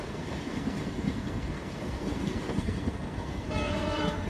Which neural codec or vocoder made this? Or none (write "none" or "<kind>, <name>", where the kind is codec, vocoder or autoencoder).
codec, SNAC